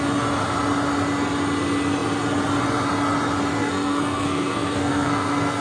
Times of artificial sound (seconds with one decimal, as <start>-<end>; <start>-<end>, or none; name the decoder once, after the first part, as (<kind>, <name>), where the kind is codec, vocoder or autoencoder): 3.6-5.6 (codec, SNAC)